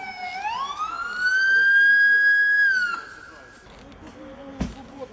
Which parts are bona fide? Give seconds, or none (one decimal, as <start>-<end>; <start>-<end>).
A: 0.0-5.1